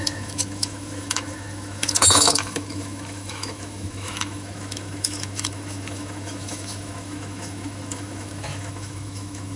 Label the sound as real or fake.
fake